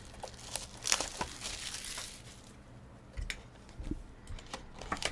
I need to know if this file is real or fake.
real